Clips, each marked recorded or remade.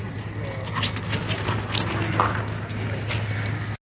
recorded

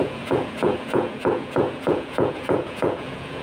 remade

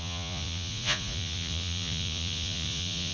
remade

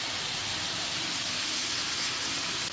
recorded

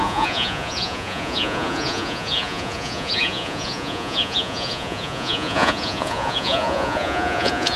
remade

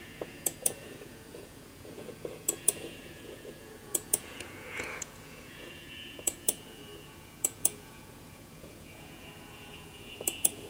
remade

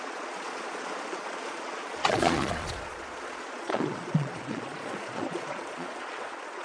remade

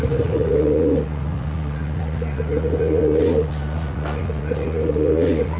remade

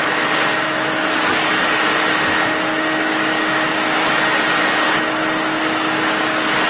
recorded